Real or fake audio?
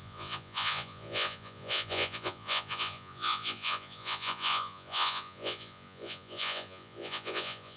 fake